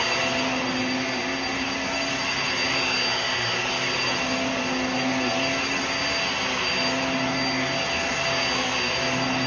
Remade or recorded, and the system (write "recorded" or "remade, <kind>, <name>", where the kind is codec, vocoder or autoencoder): recorded